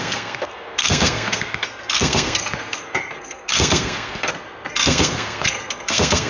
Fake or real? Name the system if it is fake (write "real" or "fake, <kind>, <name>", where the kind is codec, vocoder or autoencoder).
fake, codec, SNAC